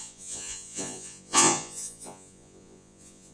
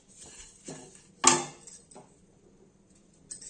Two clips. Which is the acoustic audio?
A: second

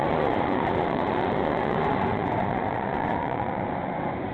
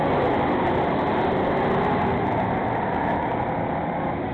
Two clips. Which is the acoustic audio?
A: second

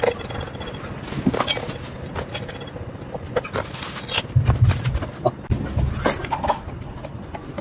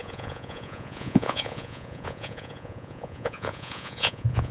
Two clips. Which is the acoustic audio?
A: first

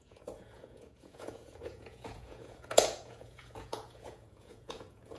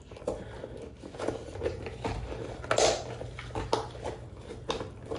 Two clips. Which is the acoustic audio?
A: second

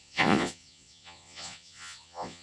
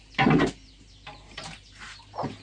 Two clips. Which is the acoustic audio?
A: second